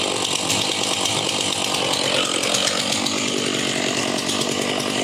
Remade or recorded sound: recorded